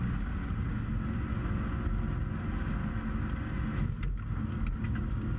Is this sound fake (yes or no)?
no